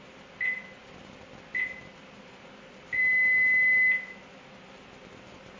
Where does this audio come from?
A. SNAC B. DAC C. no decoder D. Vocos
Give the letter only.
C